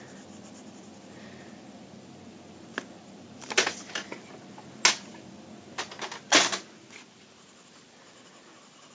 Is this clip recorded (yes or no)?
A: yes